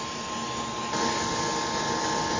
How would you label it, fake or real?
real